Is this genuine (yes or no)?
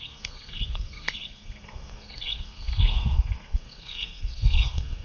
no